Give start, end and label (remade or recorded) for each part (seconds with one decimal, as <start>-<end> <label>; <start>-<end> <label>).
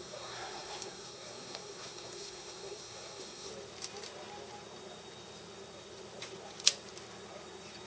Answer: 0.0-3.5 remade; 3.5-7.9 recorded